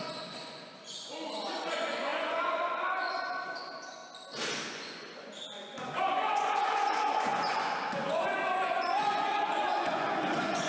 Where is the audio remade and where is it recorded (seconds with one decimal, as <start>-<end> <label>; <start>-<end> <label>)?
0.0-4.0 remade; 4.0-4.7 recorded; 4.7-10.7 remade